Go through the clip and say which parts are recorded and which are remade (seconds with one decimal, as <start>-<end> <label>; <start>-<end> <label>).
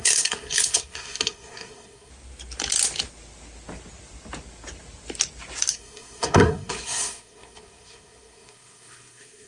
0.0-2.1 remade; 2.1-5.7 recorded; 5.7-9.5 remade